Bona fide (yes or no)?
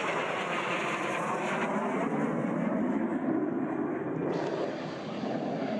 yes